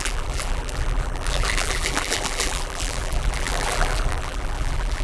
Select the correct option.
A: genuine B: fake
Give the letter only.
B